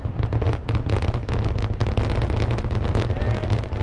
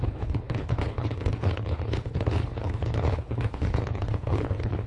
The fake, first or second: second